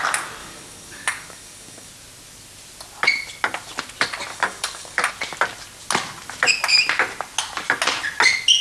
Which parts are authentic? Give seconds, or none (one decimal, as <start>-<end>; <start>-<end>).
0.0-0.4; 1.9-4.3; 5.1-8.6